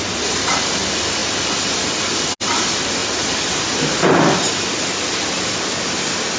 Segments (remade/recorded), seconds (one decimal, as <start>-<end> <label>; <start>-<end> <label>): 0.0-6.4 recorded